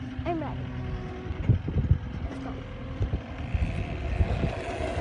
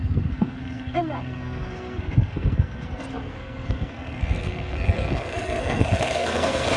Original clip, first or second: first